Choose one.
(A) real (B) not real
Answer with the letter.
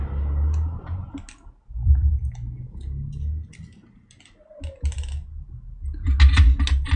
A